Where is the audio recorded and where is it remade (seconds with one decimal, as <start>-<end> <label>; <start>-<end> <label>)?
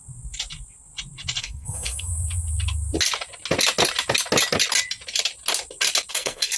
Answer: 0.0-1.4 recorded; 1.4-2.1 remade; 2.1-6.1 recorded; 6.1-6.6 remade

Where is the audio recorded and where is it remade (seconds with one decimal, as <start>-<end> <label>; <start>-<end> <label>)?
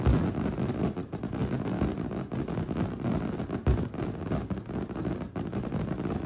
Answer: 0.0-6.3 recorded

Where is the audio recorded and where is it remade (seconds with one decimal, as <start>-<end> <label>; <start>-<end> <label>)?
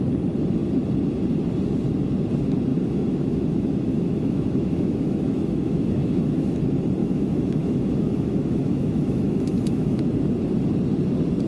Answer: 0.0-2.7 recorded; 2.7-6.6 remade; 6.6-7.0 recorded; 7.0-10.0 remade; 10.0-11.5 recorded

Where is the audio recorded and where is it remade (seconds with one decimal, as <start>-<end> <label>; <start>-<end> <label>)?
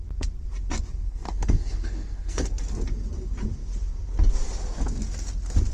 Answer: 0.0-1.0 recorded; 1.0-2.5 remade; 2.5-5.7 recorded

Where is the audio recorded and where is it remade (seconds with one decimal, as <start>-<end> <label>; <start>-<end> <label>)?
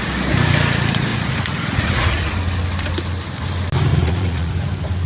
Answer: 0.0-1.1 recorded; 1.1-2.3 remade; 2.3-3.9 recorded; 3.9-4.5 remade; 4.5-5.1 recorded